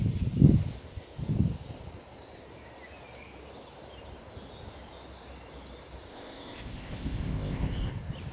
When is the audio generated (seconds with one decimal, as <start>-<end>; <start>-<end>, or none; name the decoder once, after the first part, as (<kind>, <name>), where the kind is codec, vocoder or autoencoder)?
6.1-7.9 (codec, ZipCodec)